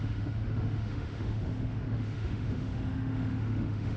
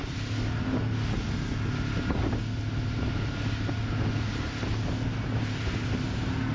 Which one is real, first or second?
second